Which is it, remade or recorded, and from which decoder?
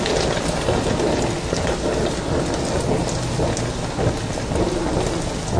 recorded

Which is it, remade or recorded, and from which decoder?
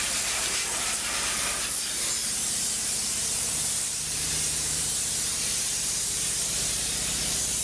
remade, vocoder, BigVGAN v2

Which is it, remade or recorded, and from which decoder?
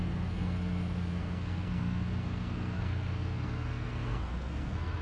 remade, codec, SNAC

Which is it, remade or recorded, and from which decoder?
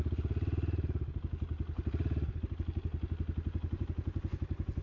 recorded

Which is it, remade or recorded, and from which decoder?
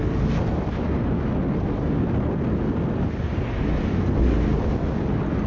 recorded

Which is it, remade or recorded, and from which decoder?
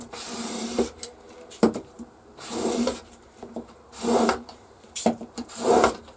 remade, vocoder, BigVGAN v2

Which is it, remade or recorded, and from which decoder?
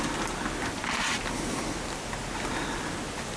recorded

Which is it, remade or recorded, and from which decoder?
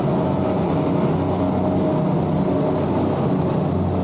recorded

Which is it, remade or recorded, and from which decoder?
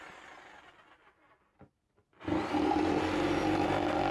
recorded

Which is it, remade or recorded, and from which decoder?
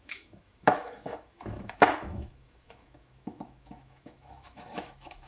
remade, autoencoder, DAC-VAE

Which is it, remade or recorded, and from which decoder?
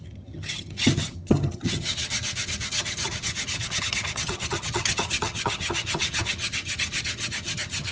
remade, vocoder, HiFi-GAN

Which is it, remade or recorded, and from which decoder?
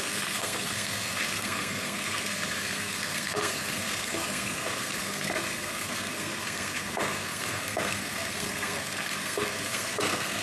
remade, codec, SNAC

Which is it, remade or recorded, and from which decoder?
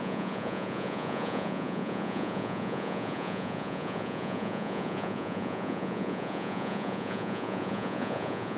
remade, vocoder, Vocos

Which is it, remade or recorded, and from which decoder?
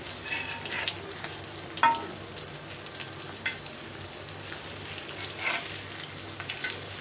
recorded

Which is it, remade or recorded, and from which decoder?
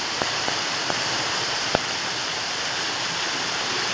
recorded